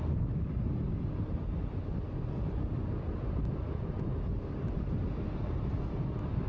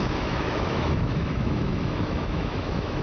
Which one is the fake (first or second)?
second